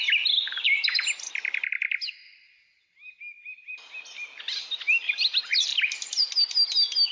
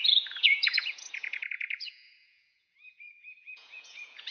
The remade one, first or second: second